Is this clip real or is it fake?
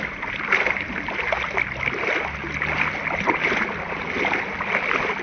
real